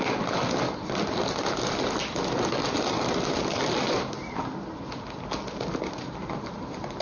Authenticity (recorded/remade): recorded